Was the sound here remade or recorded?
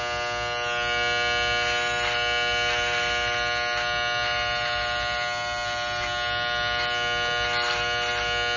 recorded